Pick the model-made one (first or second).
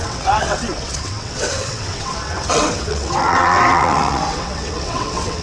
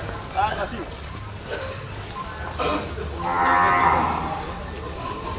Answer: first